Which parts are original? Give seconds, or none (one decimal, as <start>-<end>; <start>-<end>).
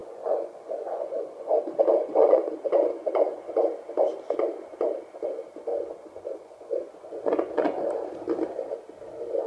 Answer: 1.5-2.2; 3.7-5.7; 7.8-9.5